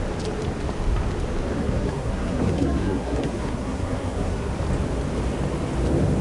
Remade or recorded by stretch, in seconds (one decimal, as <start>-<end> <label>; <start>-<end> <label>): 0.0-1.6 recorded; 1.6-4.5 remade; 4.5-6.2 recorded